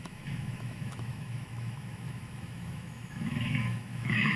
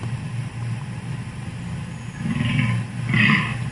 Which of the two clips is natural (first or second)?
second